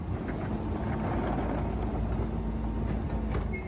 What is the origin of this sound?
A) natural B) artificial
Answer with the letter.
A